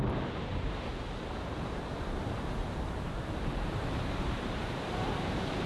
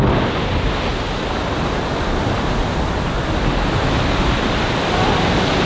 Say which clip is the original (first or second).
second